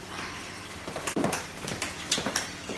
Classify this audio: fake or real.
real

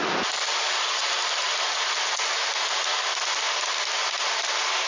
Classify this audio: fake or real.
real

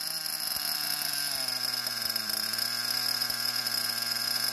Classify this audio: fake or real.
real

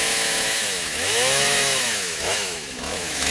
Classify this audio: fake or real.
fake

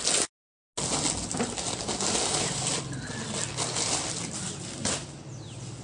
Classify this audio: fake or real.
real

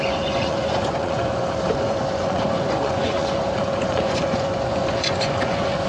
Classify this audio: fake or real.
fake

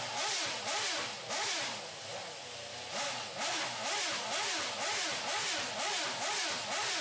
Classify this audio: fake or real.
real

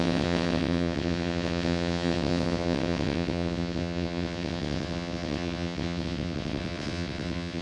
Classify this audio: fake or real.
fake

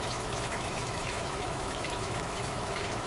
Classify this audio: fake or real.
fake